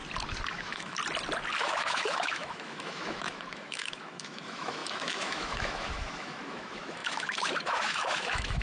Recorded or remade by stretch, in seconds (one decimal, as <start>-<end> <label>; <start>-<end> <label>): 0.0-0.5 recorded; 0.5-1.0 remade; 1.0-1.6 recorded; 1.6-8.6 remade